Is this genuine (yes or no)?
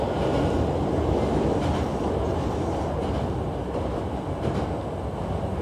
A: yes